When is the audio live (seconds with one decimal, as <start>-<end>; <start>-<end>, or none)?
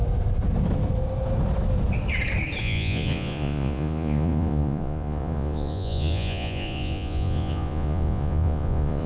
0.0-2.6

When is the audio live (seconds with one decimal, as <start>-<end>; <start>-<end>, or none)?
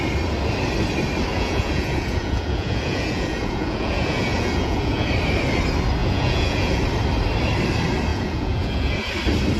0.0-1.3; 5.1-6.0; 6.8-8.1; 9.1-9.6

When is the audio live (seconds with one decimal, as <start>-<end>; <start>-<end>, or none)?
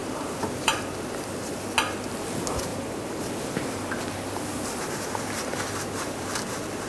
0.9-2.7; 3.3-4.5; 6.2-6.9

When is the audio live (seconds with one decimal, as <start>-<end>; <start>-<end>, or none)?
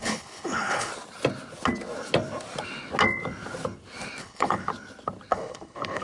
0.9-4.2; 4.7-5.3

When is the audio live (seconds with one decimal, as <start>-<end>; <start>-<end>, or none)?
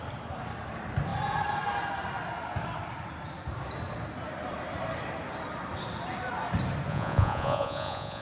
0.0-6.9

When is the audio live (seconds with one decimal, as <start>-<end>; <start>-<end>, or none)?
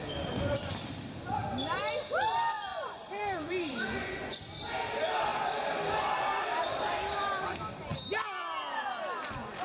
0.0-2.7; 4.4-9.6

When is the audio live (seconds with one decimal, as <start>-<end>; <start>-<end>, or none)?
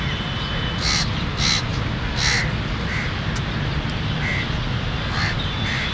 0.0-5.9